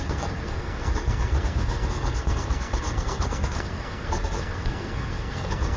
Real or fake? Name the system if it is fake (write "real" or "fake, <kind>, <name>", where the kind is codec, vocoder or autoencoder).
fake, codec, SNAC